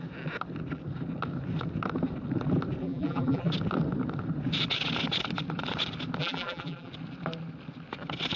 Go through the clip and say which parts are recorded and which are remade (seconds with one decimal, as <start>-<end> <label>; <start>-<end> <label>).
0.0-2.8 recorded; 2.8-3.5 remade; 3.5-6.2 recorded; 6.2-6.9 remade; 6.9-8.4 recorded